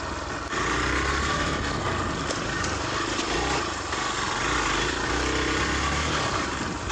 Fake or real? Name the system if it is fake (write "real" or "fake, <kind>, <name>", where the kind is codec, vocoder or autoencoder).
real